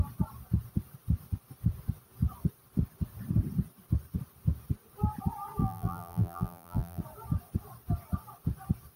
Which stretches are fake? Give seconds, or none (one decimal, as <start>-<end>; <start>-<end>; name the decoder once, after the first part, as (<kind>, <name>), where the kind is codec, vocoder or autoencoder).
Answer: 5.6-7.0 (vocoder, BigVGAN v2)